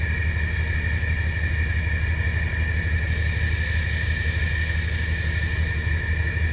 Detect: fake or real real